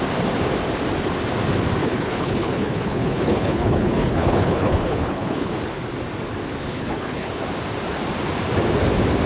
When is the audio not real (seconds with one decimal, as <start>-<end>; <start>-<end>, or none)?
1.8-5.5; 6.6-7.4